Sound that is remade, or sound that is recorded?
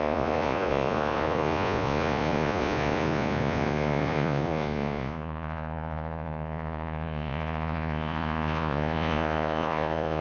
remade